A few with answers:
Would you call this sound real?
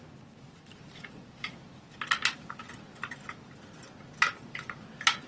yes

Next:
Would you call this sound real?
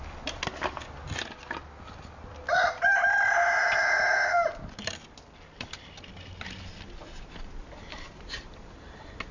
yes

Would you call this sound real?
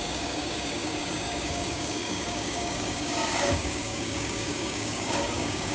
no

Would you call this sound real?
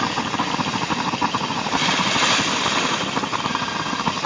yes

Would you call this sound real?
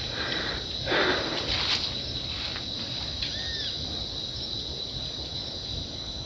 yes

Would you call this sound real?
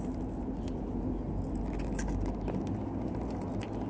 yes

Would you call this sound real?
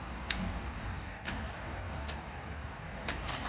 no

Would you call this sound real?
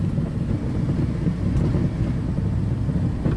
yes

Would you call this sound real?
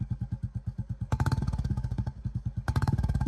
no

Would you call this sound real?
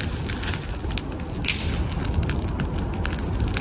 yes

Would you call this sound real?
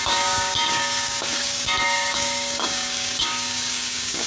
no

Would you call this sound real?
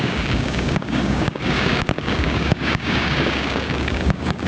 no